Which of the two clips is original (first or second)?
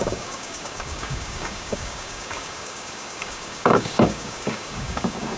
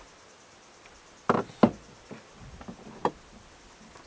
second